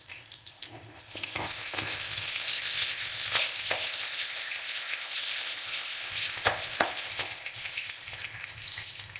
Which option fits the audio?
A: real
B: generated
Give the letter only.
B